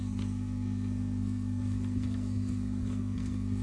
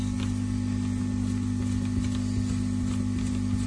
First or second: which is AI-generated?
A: first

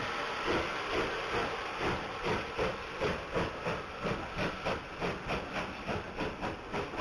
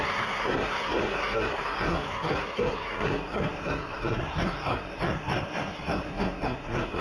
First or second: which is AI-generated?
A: second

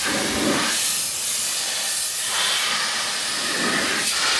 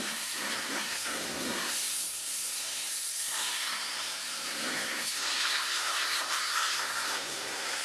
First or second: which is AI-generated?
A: second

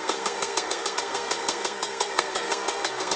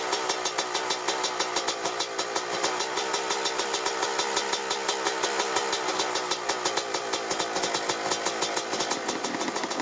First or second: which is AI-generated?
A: first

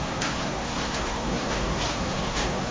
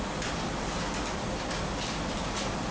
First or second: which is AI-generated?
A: first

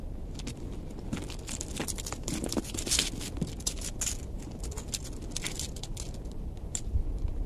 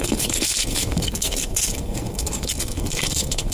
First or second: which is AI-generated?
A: second